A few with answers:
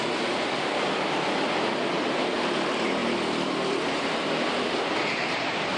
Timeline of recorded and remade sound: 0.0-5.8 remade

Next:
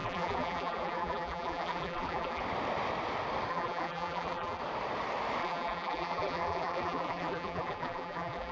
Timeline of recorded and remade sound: 0.0-2.4 remade; 2.4-3.5 recorded; 3.5-4.6 remade; 4.6-5.4 recorded; 5.4-8.5 remade

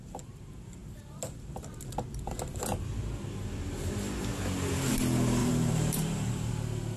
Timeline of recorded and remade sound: 0.0-5.4 recorded; 5.4-6.5 remade; 6.5-7.0 recorded